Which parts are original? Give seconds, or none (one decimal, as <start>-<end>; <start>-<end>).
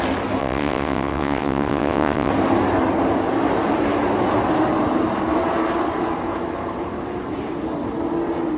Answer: 0.0-0.4; 2.3-8.6